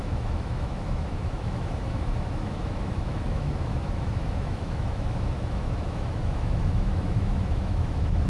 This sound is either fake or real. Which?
fake